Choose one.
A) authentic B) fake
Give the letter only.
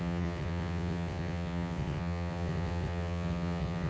B